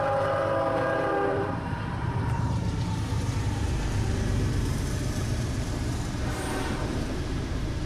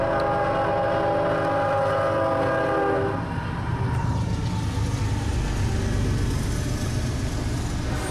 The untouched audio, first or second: second